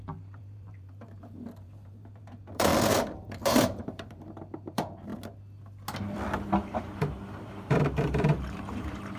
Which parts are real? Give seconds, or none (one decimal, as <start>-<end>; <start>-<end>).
2.7-3.3; 5.1-6.8